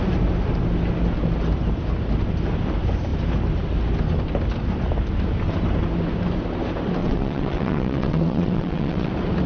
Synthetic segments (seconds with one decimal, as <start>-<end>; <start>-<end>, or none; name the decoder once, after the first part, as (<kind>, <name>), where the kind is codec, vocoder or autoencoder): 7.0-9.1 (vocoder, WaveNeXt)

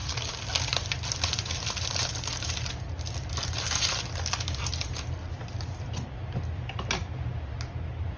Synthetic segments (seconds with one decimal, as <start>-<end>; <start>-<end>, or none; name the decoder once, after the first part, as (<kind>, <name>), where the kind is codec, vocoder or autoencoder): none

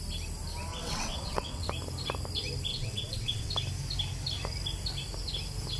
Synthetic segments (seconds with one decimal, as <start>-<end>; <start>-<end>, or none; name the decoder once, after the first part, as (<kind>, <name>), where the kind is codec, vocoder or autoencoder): 0.7-1.7 (vocoder, WaveNeXt); 2.7-3.5

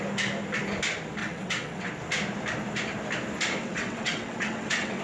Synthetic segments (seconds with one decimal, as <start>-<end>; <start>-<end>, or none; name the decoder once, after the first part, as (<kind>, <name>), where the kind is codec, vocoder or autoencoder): 1.2-1.9 (vocoder, WaveNeXt); 3.6-5.0